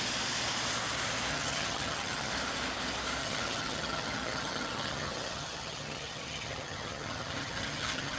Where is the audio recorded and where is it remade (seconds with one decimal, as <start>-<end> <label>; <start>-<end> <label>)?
0.0-1.3 recorded; 1.3-2.3 remade; 2.3-3.2 recorded; 3.2-8.2 remade